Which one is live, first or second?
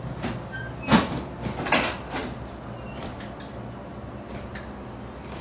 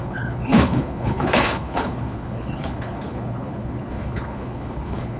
first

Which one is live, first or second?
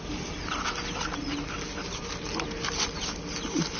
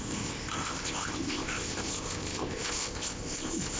first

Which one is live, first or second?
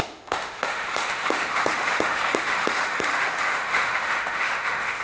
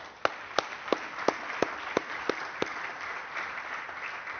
second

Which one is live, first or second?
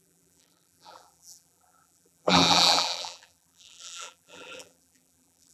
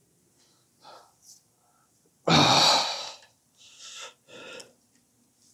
second